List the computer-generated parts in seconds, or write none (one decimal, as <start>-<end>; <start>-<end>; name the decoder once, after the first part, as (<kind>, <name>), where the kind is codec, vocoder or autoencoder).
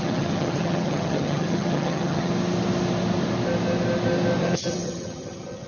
0.0-2.3 (vocoder, HiFi-GAN); 4.4-5.7